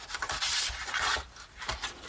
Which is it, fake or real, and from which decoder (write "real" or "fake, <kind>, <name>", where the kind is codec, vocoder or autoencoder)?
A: real